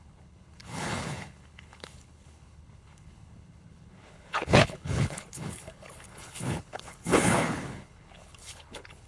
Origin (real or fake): fake